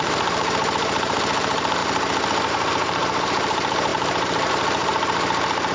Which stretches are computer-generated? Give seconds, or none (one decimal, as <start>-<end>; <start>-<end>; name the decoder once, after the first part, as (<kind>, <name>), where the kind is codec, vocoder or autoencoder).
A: 0.0-1.8 (vocoder, BigVGAN v2); 2.5-4.9

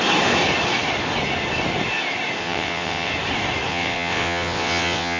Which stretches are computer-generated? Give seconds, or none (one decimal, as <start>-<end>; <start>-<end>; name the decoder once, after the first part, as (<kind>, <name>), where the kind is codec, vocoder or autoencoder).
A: 2.4-3.1 (vocoder, WaveNeXt); 3.7-5.2

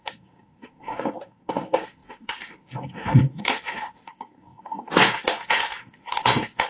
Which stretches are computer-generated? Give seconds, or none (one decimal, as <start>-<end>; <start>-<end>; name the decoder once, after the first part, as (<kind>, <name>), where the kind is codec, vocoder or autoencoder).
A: 0.0-6.7 (codec, SNAC)